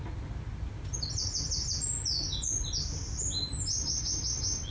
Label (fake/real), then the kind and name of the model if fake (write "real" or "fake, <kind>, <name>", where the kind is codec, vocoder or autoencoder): real